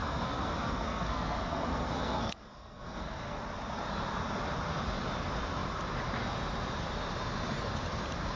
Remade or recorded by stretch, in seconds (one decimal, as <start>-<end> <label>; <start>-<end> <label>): 0.0-3.4 remade; 3.4-8.4 recorded